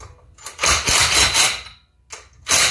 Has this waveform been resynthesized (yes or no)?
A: no